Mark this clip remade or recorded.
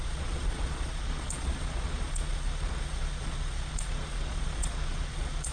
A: remade